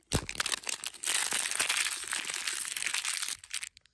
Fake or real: real